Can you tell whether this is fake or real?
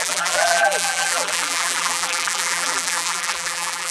fake